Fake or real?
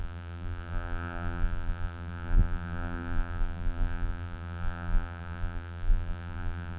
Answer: fake